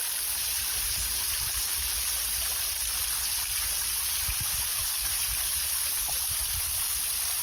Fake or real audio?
fake